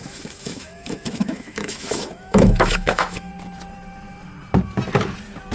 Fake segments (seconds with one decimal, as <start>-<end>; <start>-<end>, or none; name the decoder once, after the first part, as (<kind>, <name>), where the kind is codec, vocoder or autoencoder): 0.0-3.3 (autoencoder, DAC-VAE)